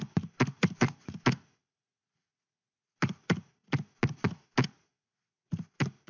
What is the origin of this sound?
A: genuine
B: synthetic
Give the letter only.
A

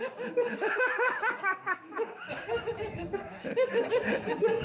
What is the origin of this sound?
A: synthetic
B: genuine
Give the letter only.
A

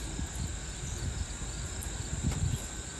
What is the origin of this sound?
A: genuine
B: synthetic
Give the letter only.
B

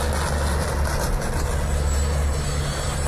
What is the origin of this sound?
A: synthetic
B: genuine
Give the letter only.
B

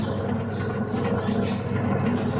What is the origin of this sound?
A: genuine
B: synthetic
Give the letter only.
A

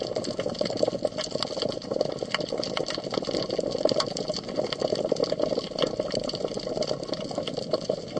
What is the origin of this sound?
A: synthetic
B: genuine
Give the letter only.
B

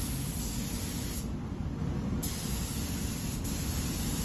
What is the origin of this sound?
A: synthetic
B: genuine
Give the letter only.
B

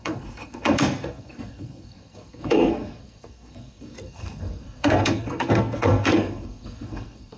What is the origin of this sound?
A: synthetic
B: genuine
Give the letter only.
A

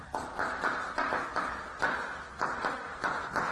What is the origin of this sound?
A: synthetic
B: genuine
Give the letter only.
B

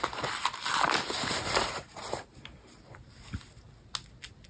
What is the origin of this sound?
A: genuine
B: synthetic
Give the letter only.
A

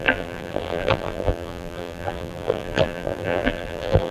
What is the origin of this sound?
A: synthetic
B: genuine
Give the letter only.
A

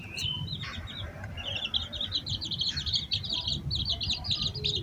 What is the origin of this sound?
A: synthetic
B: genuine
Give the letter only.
B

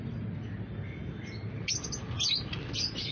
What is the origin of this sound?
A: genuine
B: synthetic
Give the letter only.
A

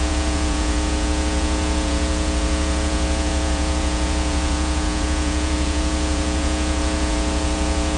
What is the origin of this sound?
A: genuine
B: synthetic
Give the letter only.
B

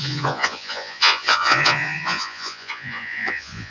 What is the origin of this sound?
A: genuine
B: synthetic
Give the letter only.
B